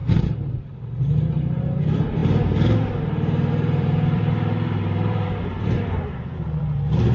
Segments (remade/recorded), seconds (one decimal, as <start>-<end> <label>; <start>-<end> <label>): 0.0-7.1 remade

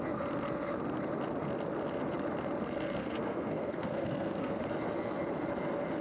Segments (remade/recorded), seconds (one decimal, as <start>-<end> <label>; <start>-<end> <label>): 0.0-3.0 recorded; 3.0-4.6 remade; 4.6-6.0 recorded

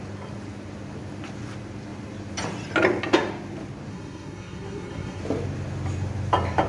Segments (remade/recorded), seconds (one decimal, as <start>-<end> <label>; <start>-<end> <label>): 0.0-3.9 recorded; 3.9-5.2 remade; 5.2-6.7 recorded

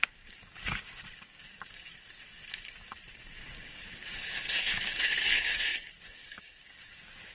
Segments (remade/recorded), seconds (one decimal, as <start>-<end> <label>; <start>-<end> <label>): 0.0-1.9 remade; 1.9-3.3 recorded; 3.3-7.3 remade

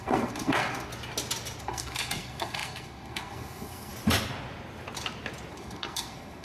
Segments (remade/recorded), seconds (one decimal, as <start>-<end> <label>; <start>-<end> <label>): 0.0-0.9 remade; 0.9-1.6 recorded; 1.6-3.9 remade; 3.9-5.5 recorded; 5.5-6.4 remade

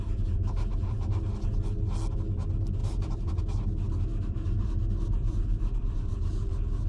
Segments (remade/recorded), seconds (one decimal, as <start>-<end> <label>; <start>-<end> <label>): 0.0-2.8 recorded; 2.8-3.4 remade; 3.4-4.6 recorded; 4.6-6.5 remade; 6.5-6.9 recorded

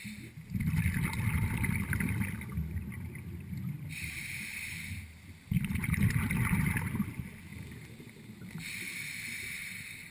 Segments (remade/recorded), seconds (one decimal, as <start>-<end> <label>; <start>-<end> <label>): 0.0-10.1 recorded